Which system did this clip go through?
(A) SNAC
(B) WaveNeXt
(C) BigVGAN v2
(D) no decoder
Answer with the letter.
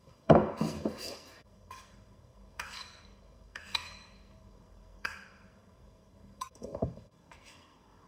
A